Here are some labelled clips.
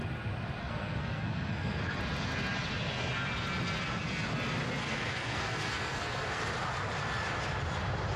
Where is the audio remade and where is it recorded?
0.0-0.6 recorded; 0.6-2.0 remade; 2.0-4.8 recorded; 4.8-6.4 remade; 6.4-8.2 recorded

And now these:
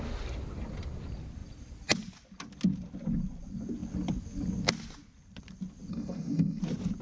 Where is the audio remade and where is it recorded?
0.0-5.9 recorded; 5.9-6.6 remade; 6.6-7.0 recorded